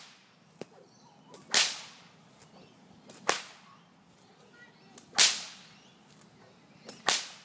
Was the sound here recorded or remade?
recorded